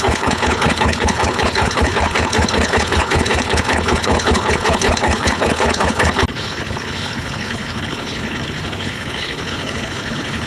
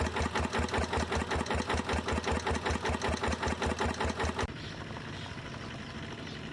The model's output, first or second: first